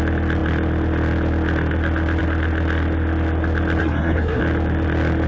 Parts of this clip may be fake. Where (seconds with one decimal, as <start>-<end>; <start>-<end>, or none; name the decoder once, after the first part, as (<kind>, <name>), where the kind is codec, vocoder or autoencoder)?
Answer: 3.8-4.4 (codec, SNAC)